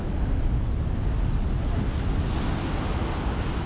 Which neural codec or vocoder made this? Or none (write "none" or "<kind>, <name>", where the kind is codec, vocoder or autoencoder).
none